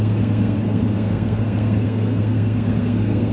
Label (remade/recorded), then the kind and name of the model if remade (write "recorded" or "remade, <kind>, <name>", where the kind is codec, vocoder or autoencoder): remade, codec, SNAC